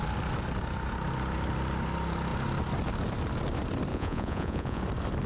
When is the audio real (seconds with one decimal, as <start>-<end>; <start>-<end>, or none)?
0.0-3.9; 4.8-5.3